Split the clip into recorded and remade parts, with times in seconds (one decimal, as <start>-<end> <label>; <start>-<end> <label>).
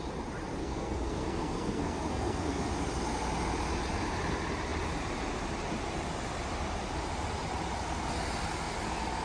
0.0-0.6 recorded; 0.6-2.7 remade; 2.7-9.2 recorded